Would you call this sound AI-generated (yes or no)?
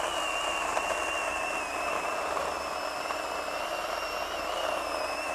no